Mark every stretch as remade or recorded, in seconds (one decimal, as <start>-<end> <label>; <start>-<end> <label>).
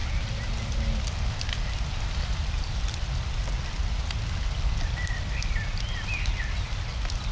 0.0-7.3 recorded